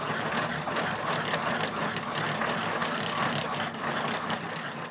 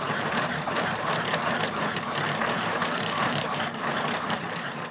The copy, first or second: second